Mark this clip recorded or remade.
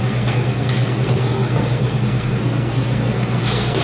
remade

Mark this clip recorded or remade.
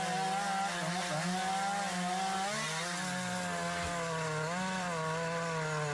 recorded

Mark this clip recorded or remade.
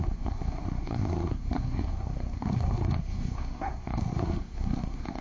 remade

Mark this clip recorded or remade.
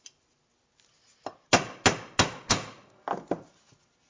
recorded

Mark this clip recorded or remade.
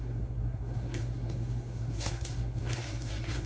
remade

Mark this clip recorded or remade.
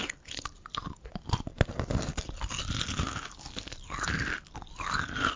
recorded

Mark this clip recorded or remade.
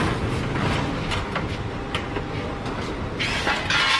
recorded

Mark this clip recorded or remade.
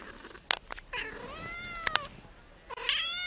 recorded